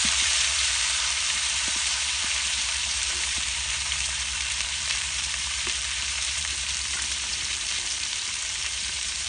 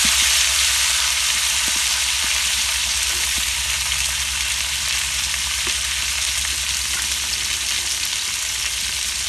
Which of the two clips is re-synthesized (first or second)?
first